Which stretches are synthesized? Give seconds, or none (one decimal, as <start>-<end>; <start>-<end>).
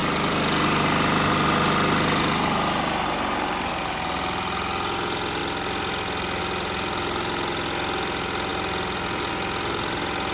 none